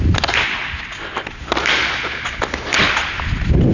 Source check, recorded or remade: recorded